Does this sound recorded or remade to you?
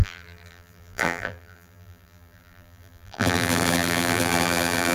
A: remade